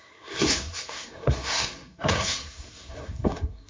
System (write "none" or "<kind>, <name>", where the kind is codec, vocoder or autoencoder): codec, SNAC